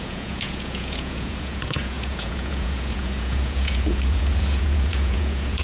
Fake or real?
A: fake